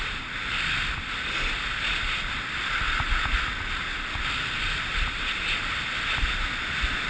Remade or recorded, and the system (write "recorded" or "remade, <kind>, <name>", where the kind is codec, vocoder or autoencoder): recorded